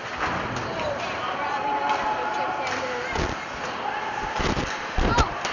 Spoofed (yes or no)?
no